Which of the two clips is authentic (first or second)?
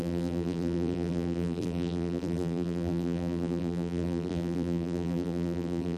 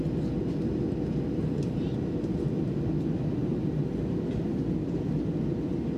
second